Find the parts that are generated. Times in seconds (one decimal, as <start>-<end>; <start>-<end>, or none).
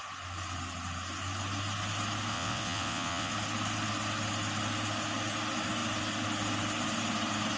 2.3-3.3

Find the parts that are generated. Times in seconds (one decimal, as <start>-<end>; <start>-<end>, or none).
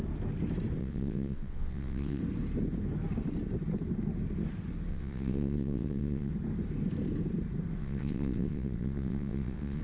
0.8-2.2; 4.9-6.3; 7.8-9.8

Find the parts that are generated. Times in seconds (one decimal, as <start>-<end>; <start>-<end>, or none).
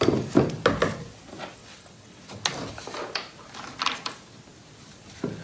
1.6-2.4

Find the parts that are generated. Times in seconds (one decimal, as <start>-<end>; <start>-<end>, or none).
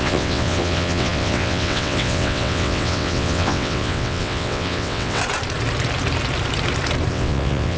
0.0-5.2; 7.1-7.8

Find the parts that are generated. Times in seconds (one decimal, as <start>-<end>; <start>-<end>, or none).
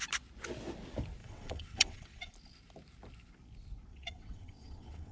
1.2-2.3; 3.9-5.1